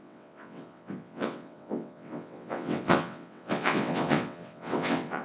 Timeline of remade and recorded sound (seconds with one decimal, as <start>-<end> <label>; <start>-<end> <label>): 0.0-5.2 remade